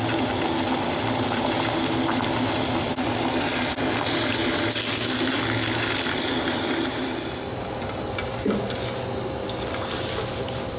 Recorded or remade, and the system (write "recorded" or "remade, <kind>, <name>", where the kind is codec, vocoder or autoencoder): recorded